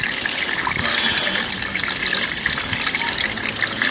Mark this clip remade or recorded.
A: recorded